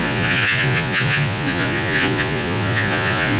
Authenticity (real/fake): fake